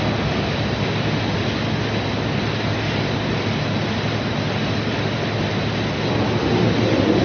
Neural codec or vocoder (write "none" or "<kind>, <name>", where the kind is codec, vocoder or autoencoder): none